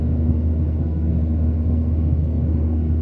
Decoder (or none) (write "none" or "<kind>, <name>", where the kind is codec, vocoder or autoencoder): codec, SNAC